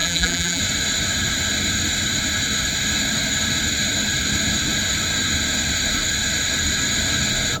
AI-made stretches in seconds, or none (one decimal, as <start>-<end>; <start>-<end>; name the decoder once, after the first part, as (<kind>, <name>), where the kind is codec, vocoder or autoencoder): 0.0-0.6 (vocoder, BigVGAN v2)